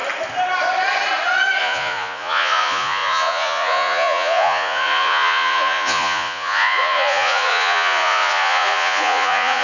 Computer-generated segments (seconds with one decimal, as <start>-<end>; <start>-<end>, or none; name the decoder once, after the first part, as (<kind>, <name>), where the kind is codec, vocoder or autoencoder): 1.6-9.6 (vocoder, Vocos)